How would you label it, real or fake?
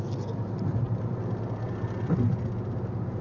real